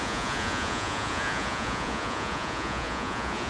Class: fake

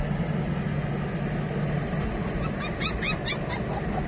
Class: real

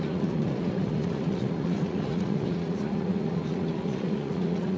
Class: fake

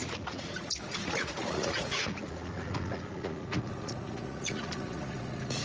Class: fake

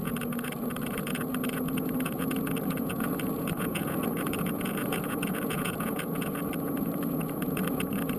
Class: fake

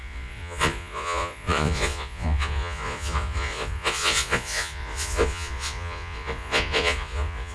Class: fake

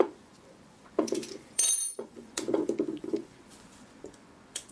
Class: fake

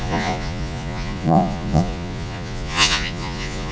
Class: fake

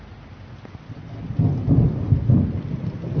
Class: real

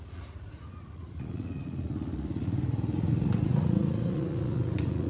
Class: fake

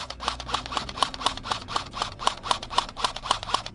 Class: fake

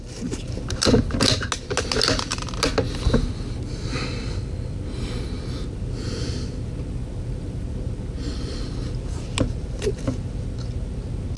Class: real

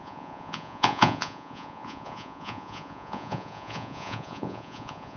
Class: fake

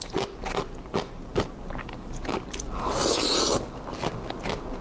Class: real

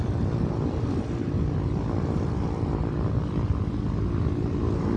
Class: real